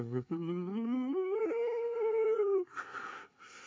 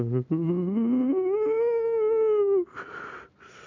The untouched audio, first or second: second